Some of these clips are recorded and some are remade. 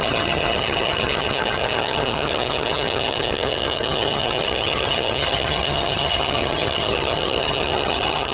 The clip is remade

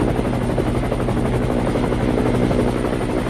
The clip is recorded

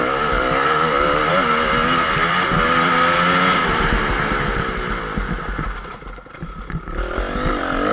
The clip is recorded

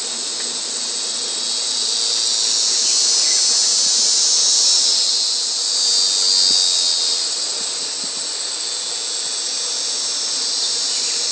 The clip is recorded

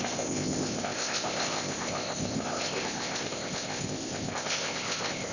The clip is remade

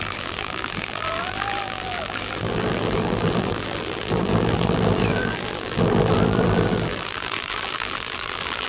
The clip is remade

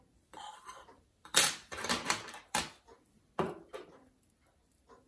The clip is remade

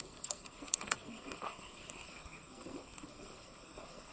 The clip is remade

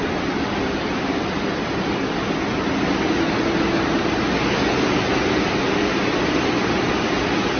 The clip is recorded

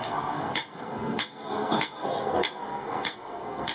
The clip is remade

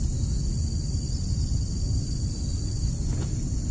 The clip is recorded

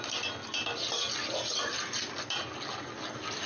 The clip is recorded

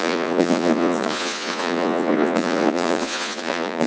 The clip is remade